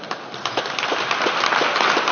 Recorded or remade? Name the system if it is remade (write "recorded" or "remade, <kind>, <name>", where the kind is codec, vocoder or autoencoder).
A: recorded